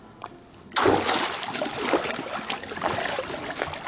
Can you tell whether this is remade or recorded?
recorded